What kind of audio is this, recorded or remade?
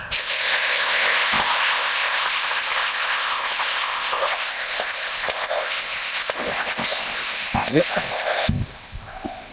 remade